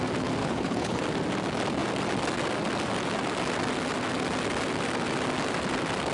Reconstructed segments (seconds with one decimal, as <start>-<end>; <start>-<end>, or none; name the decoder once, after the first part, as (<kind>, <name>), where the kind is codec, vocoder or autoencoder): 0.4-1.0 (codec, HILCodec)